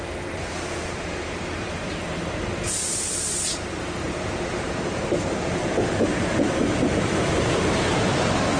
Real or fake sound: fake